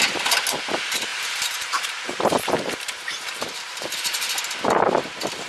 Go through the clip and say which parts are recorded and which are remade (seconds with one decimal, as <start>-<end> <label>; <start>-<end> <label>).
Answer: 0.0-1.1 recorded; 1.1-4.4 remade; 4.4-5.5 recorded